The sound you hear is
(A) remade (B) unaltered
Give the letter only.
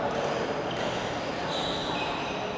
B